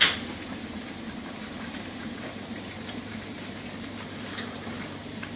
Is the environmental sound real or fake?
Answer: fake